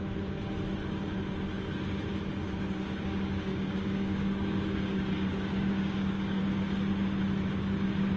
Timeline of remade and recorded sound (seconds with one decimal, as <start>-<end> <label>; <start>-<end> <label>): 0.0-2.4 recorded; 2.4-6.4 remade; 6.4-8.2 recorded